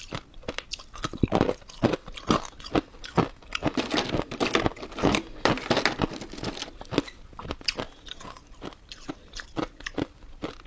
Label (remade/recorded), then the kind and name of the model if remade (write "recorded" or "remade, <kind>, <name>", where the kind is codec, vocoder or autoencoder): recorded